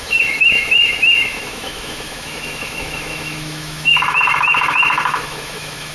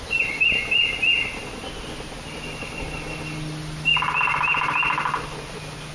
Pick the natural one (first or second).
second